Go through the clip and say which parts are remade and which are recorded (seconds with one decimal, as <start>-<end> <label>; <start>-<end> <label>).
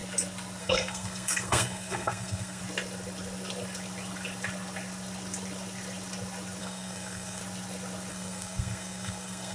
0.0-0.6 recorded; 0.6-2.6 remade; 2.6-6.6 recorded; 6.6-7.4 remade; 7.4-8.1 recorded; 8.1-9.5 remade